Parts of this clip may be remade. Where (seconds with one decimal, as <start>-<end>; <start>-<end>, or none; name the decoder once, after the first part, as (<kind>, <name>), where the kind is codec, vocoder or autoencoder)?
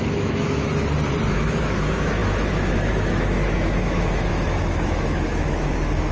0.0-0.7 (autoencoder, DAC-VAE); 1.3-6.1